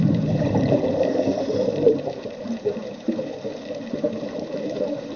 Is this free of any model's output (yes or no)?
no